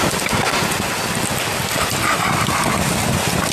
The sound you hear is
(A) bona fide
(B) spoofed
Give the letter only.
A